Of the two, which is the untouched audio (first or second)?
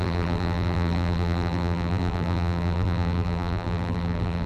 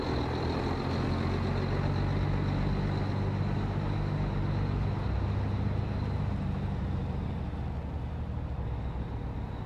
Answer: second